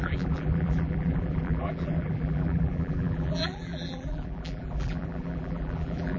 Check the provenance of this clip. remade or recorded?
remade